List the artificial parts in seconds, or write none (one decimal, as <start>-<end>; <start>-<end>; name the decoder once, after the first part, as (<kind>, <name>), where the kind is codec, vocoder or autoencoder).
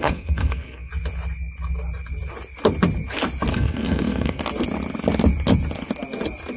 0.0-0.9 (codec, SNAC); 3.5-4.4